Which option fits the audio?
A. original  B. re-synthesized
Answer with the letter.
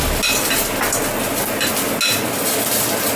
A